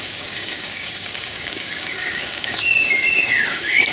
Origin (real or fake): fake